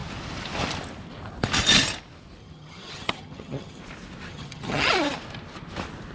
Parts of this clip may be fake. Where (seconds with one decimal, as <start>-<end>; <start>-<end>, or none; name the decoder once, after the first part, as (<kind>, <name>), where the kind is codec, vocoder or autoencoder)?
2.4-3.8 (vocoder, HiFi-GAN); 4.3-4.9